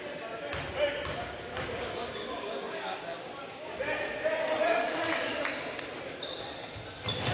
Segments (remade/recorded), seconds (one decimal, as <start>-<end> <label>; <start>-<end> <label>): 0.0-1.2 recorded; 1.2-3.8 remade; 3.8-4.6 recorded; 4.6-5.3 remade; 5.3-7.3 recorded